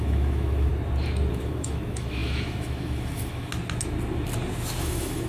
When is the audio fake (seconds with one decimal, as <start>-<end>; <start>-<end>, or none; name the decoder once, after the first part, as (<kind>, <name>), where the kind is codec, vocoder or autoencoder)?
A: 0.0-0.7 (autoencoder, DAC-VAE); 1.3-3.5; 4.8-5.3